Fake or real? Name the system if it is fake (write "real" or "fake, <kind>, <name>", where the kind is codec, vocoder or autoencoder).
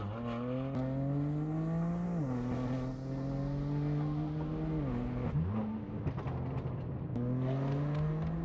real